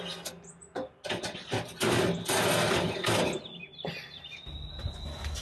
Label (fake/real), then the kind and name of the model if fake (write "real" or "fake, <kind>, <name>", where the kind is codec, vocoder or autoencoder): real